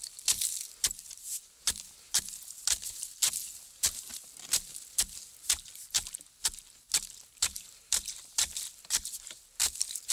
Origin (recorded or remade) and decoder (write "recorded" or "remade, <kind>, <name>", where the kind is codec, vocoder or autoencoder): recorded